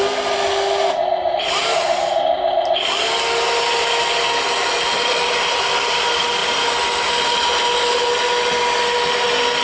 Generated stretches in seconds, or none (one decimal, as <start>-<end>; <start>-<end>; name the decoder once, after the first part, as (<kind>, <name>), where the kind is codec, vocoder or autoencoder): none